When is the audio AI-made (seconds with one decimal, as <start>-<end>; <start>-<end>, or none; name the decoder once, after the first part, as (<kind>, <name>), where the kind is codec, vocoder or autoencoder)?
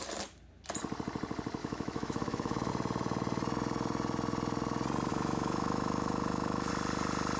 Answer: 1.6-2.7 (autoencoder, DAC-VAE); 5.1-6.7